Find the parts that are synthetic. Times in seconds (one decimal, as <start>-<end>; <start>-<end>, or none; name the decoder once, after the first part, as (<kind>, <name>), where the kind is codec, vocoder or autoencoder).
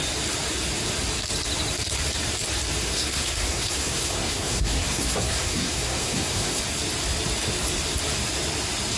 2.8-6.6 (codec, SNAC)